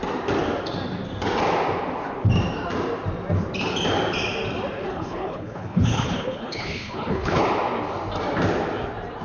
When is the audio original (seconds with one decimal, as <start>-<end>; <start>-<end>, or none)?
0.0-4.9; 7.4-9.2